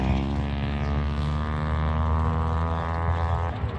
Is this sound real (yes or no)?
yes